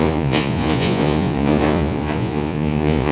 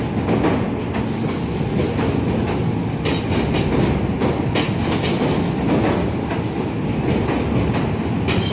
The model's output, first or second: first